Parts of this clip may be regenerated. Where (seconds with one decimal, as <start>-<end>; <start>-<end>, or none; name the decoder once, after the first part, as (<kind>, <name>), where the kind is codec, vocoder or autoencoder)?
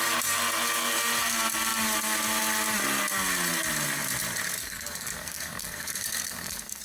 4.6-6.8 (codec, SNAC)